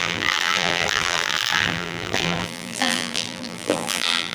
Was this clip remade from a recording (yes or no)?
yes